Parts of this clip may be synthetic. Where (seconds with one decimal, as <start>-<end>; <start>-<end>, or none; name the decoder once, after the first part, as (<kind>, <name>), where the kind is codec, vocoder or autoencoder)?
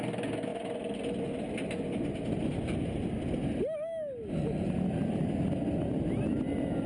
none